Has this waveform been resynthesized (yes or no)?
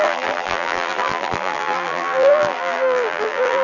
yes